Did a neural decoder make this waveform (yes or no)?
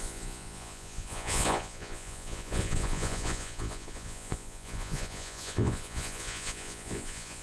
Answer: yes